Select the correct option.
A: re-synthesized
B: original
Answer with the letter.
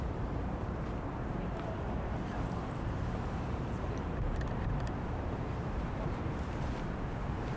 A